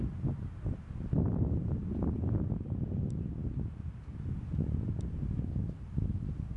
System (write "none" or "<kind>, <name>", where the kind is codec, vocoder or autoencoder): none